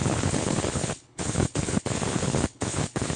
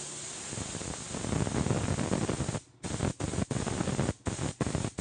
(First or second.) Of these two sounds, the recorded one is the second